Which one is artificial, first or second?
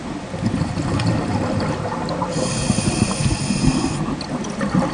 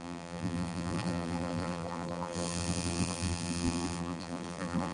second